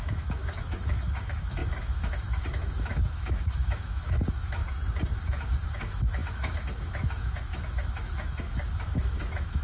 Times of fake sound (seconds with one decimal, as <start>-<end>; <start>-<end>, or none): 0.0-4.6; 5.2-9.6